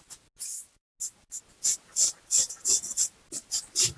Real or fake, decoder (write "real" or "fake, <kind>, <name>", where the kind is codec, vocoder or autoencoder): real